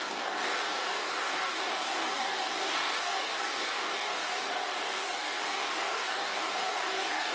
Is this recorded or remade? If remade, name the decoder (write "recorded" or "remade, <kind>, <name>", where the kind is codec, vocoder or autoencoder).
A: remade, codec, DAC